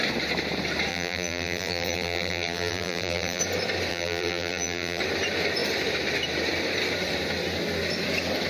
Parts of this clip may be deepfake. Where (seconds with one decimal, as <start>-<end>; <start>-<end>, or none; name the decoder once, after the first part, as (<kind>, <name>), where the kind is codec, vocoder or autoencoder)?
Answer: 0.9-3.4 (vocoder, BigVGAN v2); 3.9-5.0